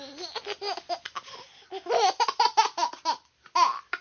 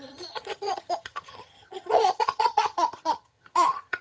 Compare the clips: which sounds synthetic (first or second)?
second